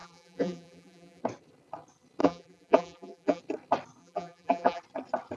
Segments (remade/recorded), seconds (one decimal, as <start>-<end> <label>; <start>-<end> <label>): 0.0-1.2 remade; 1.2-2.2 recorded; 2.2-3.4 remade; 3.4-4.0 recorded; 4.0-4.8 remade; 4.8-5.4 recorded